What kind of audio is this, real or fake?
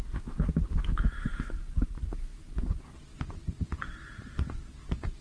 real